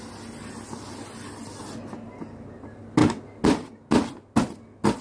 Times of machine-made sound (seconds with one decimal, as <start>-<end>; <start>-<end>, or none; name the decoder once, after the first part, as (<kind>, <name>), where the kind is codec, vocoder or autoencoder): none